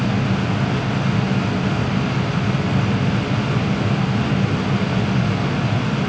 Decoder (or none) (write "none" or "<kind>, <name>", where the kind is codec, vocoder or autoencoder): none